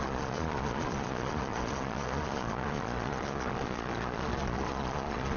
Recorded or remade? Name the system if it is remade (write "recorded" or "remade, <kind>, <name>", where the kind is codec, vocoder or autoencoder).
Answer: remade, vocoder, Vocos